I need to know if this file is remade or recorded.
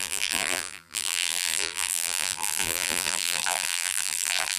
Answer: remade